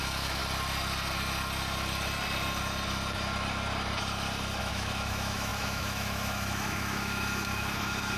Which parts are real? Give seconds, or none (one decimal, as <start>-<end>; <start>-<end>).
0.4-4.6